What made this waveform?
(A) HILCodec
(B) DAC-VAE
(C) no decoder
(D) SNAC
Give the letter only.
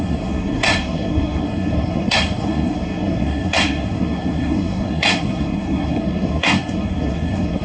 D